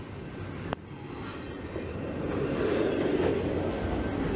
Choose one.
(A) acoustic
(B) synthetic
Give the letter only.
A